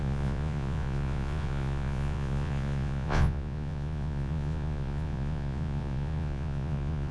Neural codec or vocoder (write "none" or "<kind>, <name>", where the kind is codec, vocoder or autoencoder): vocoder, Vocos